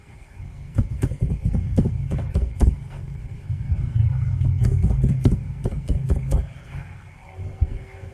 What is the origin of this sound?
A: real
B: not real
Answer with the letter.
B